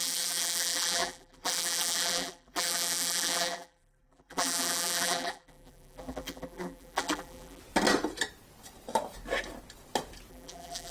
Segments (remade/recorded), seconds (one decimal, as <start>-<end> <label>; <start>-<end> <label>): 0.0-7.6 remade; 7.6-10.3 recorded; 10.3-10.9 remade